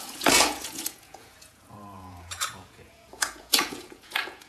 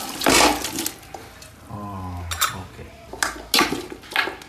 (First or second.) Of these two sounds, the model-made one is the first